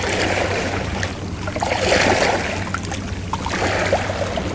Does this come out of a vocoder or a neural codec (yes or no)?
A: no